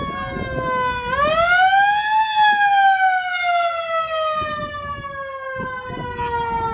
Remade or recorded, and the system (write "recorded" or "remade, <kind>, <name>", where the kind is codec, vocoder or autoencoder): recorded